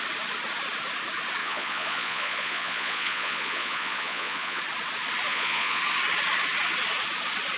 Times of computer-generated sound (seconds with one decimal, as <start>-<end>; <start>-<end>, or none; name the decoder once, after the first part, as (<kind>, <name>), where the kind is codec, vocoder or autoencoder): 1.4-4.6 (vocoder, Vocos); 5.3-5.8